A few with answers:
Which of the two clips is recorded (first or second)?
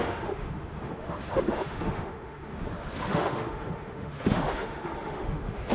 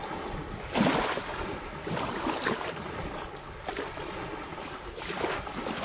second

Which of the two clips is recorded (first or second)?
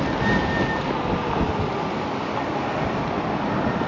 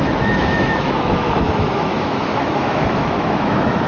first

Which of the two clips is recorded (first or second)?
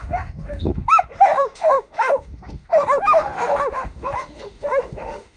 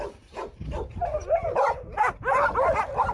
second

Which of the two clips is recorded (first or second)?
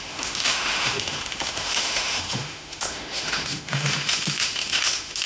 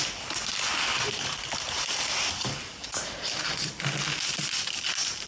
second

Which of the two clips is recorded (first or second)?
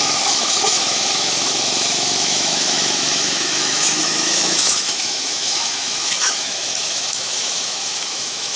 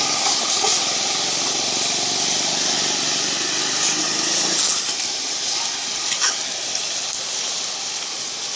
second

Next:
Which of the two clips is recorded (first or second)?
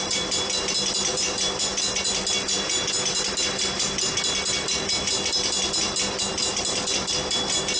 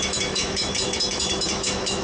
first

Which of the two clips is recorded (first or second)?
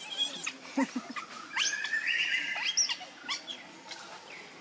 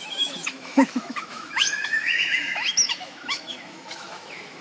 first